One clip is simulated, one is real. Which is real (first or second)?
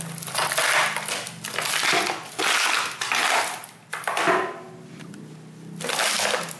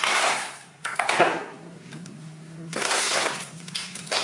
first